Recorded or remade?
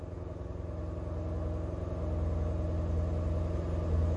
recorded